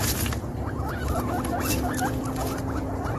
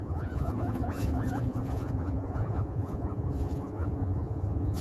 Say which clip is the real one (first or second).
first